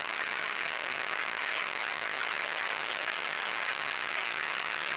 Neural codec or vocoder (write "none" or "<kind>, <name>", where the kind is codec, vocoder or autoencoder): vocoder, HiFi-GAN